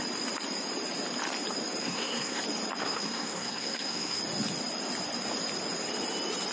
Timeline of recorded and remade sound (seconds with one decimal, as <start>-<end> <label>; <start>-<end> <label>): 0.0-1.8 recorded; 1.8-2.4 remade; 2.4-2.8 recorded; 2.8-4.2 remade; 4.2-6.5 recorded